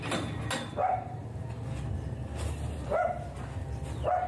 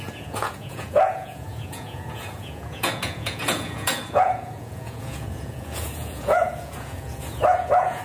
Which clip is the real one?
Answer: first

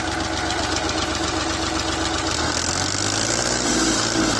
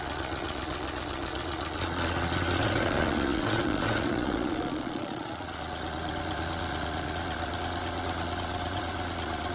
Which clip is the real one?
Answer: first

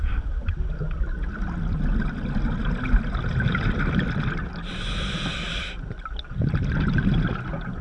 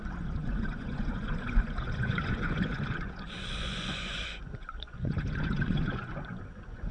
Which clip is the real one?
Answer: first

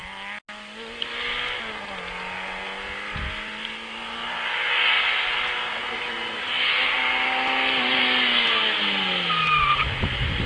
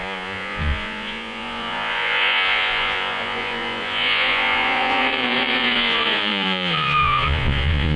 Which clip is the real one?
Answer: first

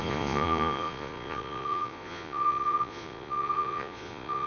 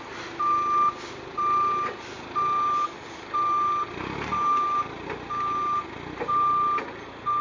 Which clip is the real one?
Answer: second